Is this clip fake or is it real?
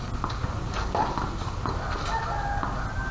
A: real